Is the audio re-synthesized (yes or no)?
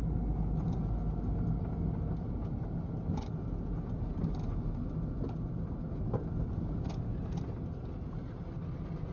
no